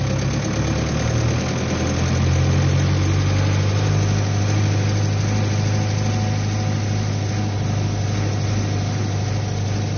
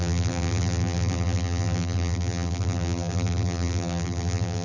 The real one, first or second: first